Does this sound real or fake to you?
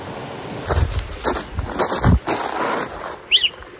real